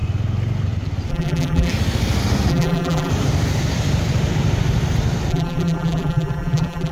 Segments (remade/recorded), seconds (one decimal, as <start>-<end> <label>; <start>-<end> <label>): 0.0-1.1 recorded; 1.1-1.7 remade; 1.7-2.5 recorded; 2.5-3.1 remade; 3.1-5.3 recorded; 5.3-6.9 remade